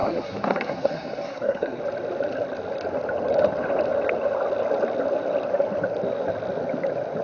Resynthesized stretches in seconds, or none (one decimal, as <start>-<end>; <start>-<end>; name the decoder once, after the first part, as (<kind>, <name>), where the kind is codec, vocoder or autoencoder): 0.0-1.8 (codec, SNAC)